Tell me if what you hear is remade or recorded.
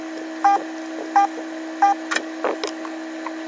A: recorded